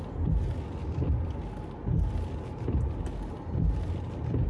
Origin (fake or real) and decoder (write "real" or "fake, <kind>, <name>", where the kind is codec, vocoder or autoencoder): real